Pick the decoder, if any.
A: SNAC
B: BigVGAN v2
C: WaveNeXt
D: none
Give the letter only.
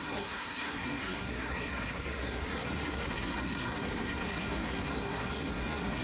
A